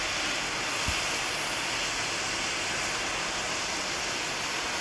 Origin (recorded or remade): recorded